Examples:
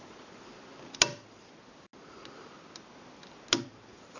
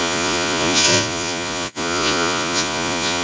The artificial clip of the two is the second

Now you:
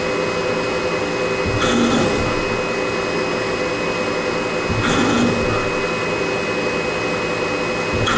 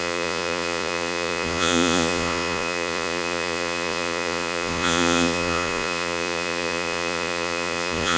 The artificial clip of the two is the second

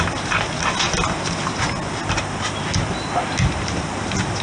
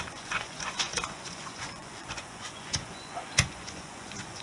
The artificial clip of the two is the second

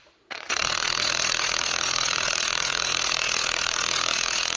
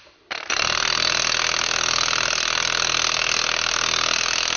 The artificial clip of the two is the first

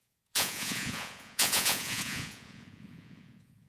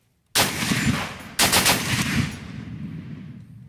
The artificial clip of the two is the first